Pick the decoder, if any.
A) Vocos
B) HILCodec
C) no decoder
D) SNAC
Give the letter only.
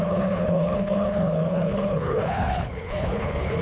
B